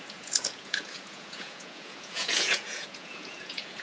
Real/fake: fake